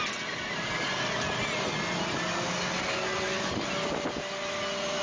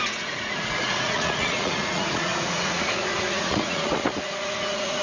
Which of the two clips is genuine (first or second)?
first